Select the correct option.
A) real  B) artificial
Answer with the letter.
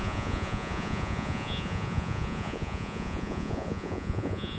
B